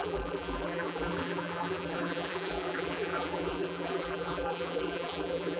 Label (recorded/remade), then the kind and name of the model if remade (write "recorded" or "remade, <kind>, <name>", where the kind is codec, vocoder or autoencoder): remade, vocoder, BigVGAN v2